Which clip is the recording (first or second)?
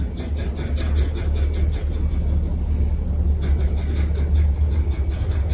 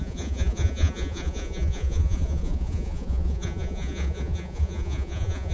first